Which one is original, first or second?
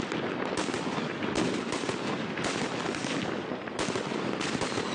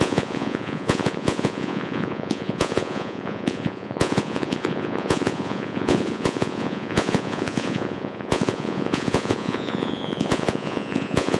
first